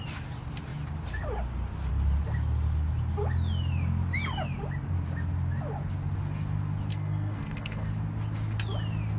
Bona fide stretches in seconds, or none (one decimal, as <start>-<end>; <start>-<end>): 0.0-6.9; 7.9-9.2